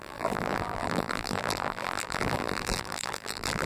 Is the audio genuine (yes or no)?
no